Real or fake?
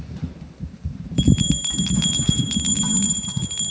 fake